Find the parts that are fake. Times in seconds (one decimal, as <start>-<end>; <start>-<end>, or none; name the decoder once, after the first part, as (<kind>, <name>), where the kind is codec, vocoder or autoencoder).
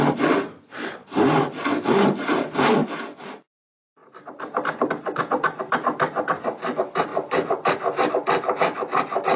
none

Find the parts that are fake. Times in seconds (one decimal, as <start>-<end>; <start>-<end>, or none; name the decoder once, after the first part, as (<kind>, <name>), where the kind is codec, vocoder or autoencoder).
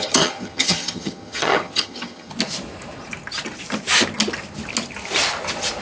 0.0-2.3 (vocoder, HiFi-GAN)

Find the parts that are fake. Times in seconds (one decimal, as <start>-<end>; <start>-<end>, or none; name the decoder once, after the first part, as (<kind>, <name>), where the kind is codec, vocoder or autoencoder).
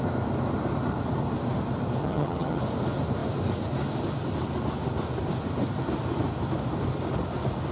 2.0-2.6 (vocoder, HiFi-GAN)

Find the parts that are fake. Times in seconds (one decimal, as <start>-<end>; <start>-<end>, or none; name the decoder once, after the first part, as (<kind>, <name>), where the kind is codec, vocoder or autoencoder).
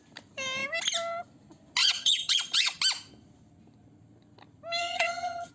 1.8-2.8 (vocoder, HiFi-GAN); 4.8-5.5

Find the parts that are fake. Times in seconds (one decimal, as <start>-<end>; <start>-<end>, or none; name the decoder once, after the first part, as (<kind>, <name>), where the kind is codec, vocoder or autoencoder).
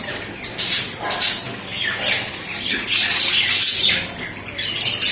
none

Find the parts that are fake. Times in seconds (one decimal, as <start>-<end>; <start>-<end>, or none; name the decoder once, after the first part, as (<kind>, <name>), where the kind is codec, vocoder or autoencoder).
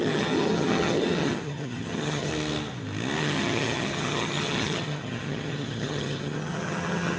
0.0-2.3 (vocoder, HiFi-GAN); 3.2-7.2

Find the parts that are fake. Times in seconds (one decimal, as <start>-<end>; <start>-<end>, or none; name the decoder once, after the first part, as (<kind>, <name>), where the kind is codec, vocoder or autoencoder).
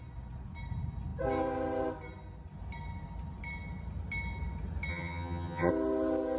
4.9-5.7 (vocoder, HiFi-GAN)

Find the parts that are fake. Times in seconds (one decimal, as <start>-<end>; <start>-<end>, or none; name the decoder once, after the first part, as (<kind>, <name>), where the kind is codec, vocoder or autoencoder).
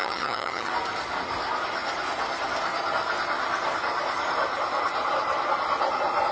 0.0-0.7 (vocoder, HiFi-GAN)